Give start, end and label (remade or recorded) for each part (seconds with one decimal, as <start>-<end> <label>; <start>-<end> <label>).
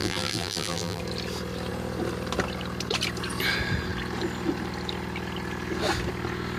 0.0-1.0 remade; 1.0-6.6 recorded